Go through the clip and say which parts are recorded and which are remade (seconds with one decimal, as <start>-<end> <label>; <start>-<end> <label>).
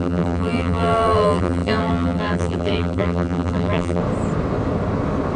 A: 0.0-4.0 remade; 4.0-5.4 recorded